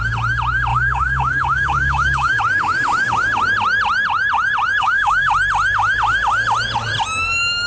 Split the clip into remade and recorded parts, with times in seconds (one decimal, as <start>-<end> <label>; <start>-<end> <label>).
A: 0.0-0.7 recorded; 0.7-2.4 remade; 2.4-4.8 recorded; 4.8-5.3 remade; 5.3-7.7 recorded